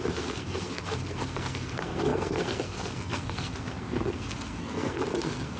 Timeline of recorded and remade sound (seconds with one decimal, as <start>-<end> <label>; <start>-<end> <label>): 0.0-5.6 remade